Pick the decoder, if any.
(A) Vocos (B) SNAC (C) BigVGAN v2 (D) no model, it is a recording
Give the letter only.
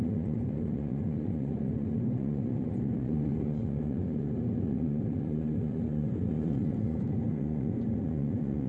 A